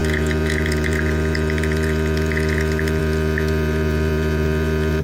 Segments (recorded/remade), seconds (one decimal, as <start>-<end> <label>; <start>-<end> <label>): 0.0-5.0 remade